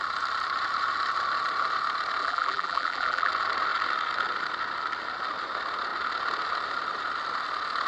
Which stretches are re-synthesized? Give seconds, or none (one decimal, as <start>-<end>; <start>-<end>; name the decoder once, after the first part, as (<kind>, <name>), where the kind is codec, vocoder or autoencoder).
2.2-3.3 (vocoder, BigVGAN v2)